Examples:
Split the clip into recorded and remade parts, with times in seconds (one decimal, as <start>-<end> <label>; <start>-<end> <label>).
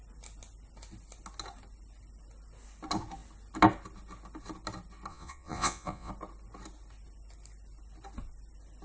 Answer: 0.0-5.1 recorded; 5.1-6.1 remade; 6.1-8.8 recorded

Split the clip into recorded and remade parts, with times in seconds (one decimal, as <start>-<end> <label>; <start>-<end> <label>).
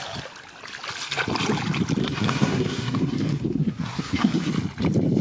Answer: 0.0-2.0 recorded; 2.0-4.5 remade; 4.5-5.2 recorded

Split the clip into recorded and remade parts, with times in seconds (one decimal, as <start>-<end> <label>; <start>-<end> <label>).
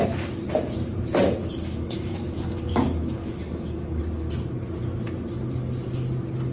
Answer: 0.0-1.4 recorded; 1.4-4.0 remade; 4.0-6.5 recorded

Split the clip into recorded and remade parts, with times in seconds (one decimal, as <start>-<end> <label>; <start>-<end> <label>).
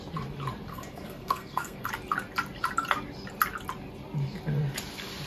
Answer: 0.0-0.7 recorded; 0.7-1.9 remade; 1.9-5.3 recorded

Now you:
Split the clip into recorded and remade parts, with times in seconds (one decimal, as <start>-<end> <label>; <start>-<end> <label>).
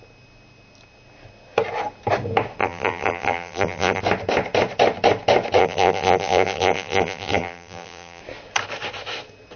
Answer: 0.0-2.6 recorded; 2.6-4.0 remade; 4.0-5.6 recorded; 5.6-8.2 remade; 8.2-9.6 recorded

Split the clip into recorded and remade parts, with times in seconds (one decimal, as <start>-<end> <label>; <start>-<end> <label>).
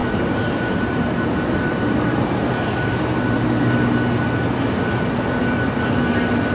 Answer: 0.0-3.2 remade; 3.2-6.5 recorded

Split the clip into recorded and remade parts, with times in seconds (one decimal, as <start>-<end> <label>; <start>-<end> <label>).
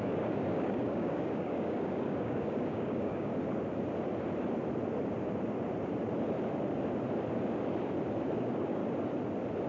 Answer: 0.0-3.3 remade; 3.3-8.2 recorded; 8.2-8.8 remade; 8.8-9.7 recorded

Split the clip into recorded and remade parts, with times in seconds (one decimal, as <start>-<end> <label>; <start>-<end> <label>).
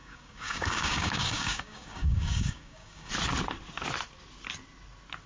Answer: 0.0-3.1 remade; 3.1-5.3 recorded